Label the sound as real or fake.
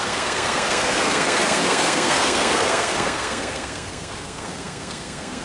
fake